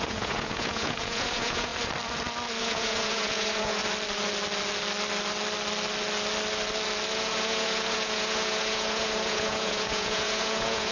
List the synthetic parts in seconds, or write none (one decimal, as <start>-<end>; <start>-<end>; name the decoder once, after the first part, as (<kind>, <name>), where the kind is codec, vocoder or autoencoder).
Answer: 0.0-1.7 (vocoder, Vocos); 2.6-3.8; 7.1-10.9